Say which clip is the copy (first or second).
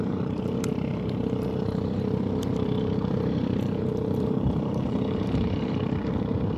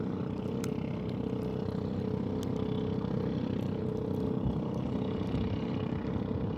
first